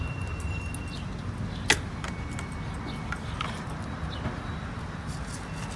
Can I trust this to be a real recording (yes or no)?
yes